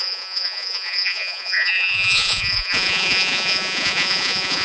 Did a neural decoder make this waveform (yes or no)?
yes